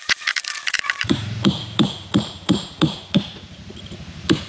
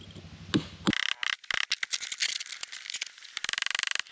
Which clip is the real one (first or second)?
second